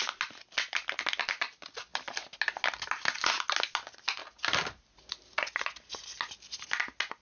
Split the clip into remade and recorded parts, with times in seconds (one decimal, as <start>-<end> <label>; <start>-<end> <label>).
0.0-7.2 recorded

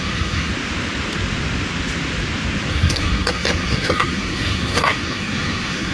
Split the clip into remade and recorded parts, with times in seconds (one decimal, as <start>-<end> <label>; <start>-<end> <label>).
0.0-0.5 remade; 0.5-2.7 recorded; 2.7-5.9 remade